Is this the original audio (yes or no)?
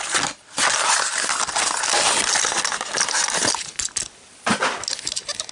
yes